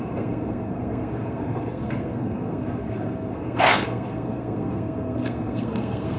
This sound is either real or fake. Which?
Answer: fake